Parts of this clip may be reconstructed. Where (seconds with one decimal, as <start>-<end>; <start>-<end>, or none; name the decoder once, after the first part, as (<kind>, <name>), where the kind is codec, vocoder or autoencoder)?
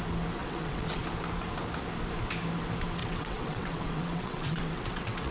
0.4-1.0 (vocoder, WaveNeXt); 3.0-5.3